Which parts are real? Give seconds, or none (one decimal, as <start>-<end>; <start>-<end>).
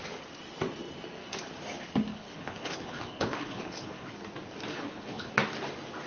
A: 0.0-2.1; 4.1-4.7; 5.3-6.1